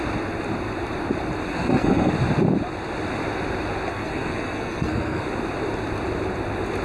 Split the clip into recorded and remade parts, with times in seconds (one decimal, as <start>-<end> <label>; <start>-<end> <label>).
0.0-1.5 recorded; 1.5-2.1 remade; 2.1-3.9 recorded; 3.9-5.2 remade; 5.2-6.8 recorded